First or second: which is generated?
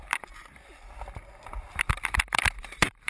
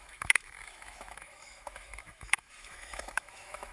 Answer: second